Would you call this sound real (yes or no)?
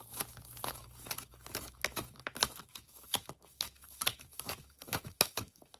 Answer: no